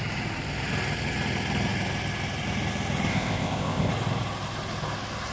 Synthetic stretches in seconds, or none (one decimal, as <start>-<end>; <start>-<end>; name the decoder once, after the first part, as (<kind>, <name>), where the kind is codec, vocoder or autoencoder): 3.1-3.9 (codec, ZipCodec)

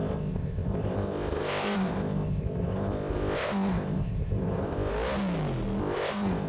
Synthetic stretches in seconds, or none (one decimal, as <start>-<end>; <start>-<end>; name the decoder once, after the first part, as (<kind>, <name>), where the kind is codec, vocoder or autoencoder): 0.0-4.9 (codec, ZipCodec); 5.8-6.5

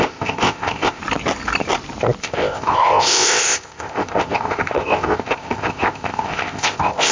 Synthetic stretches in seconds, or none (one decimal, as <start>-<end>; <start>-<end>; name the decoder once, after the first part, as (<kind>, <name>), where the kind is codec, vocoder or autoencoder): 0.0-1.0 (codec, ZipCodec); 2.2-7.1

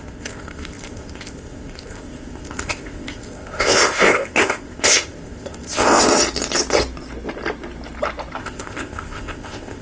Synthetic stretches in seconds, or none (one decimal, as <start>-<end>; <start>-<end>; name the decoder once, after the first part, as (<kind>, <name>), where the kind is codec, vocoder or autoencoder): 0.0-6.0 (codec, ZipCodec); 8.4-9.8

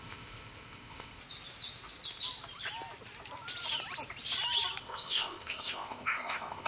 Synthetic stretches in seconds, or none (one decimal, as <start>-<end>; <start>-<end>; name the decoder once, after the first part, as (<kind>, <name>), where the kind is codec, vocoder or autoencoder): 0.0-1.2 (codec, ZipCodec); 4.8-6.7

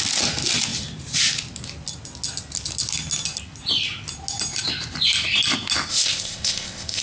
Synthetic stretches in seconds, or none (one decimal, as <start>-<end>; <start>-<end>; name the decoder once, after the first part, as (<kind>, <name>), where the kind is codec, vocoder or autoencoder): 5.9-7.0 (codec, ZipCodec)

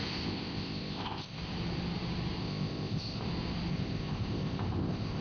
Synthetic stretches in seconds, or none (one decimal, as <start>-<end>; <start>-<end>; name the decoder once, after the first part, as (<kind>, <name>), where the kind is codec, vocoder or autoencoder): 0.0-1.4 (codec, ZipCodec); 2.4-3.3; 3.7-5.2

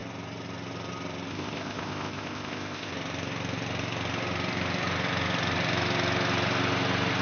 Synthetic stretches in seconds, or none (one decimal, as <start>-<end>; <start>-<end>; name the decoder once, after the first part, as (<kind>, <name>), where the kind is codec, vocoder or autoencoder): 1.3-2.9 (codec, ZipCodec)